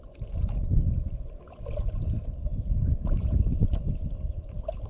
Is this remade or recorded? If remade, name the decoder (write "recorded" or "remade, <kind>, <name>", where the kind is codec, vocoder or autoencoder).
recorded